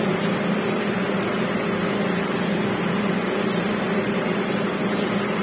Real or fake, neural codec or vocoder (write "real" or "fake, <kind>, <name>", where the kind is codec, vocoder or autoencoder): fake, vocoder, BigVGAN v2